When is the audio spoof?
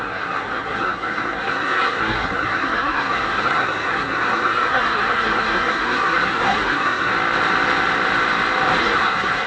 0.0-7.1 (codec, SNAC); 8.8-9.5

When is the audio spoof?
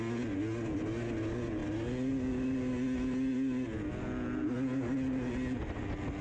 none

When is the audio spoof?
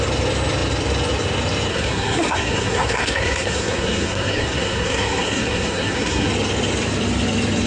1.7-6.3 (codec, SNAC)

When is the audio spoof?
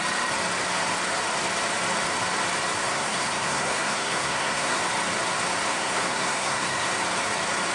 2.8-4.8 (codec, SNAC); 5.7-6.9